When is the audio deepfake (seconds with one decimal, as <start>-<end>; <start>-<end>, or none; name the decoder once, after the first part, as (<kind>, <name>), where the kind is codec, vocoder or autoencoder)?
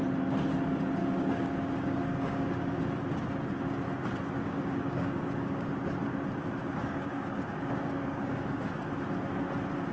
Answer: 1.0-2.8 (codec, DAC); 4.4-5.7; 6.8-8.7